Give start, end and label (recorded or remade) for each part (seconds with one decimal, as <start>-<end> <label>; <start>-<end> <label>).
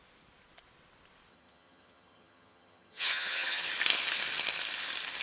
0.0-1.3 recorded; 1.3-3.7 remade; 3.7-5.2 recorded